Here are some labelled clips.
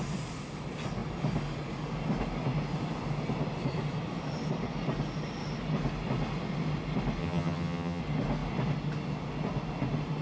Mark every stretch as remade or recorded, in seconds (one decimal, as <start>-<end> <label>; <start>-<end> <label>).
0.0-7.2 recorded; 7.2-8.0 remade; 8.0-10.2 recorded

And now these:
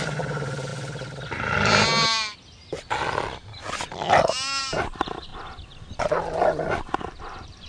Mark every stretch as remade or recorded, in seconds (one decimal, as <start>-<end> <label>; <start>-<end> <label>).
0.0-0.7 remade; 0.7-4.6 recorded; 4.6-5.3 remade; 5.3-7.1 recorded; 7.1-7.7 remade

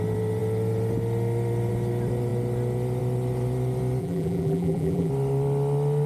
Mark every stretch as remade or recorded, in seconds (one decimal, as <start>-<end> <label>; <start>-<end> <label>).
0.0-4.0 recorded; 4.0-5.1 remade; 5.1-6.1 recorded